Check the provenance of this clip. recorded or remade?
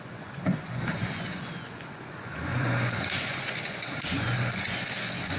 remade